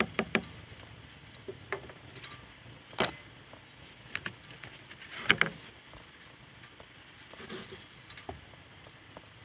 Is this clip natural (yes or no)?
yes